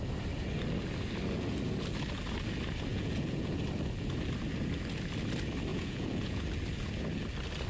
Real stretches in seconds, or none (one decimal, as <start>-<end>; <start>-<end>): 0.0-2.9; 3.6-5.7; 6.4-7.7